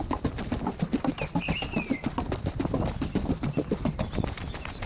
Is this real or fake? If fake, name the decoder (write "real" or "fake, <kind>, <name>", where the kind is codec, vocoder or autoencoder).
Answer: real